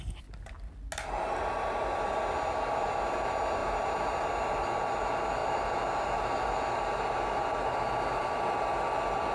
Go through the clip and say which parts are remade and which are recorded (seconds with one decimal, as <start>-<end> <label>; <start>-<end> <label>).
0.0-9.3 recorded